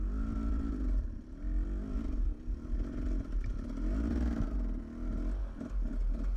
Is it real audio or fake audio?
real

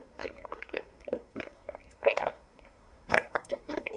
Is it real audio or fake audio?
fake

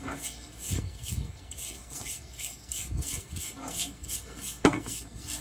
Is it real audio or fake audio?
fake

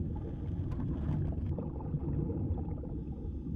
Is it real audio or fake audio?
real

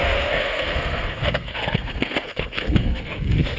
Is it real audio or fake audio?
fake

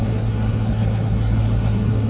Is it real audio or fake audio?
fake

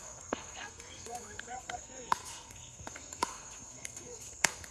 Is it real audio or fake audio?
fake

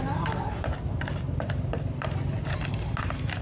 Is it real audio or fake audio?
real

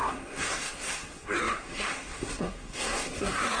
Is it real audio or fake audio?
fake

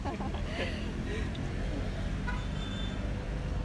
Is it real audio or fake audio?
real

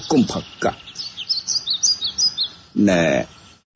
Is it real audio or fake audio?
real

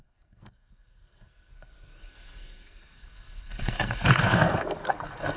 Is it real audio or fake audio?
fake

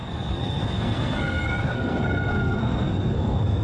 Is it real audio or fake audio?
fake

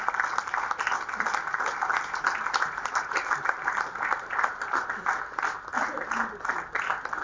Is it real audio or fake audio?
real